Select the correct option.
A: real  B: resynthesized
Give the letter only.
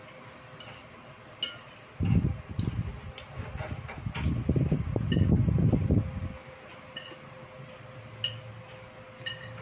A